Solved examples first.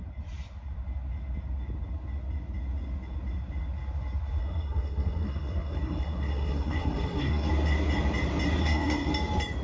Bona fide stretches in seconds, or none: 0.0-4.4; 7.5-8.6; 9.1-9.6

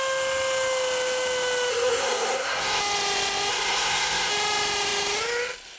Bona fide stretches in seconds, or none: 0.0-1.7; 2.8-3.5; 4.3-5.8

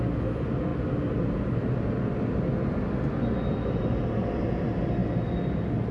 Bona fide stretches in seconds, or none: 0.0-5.9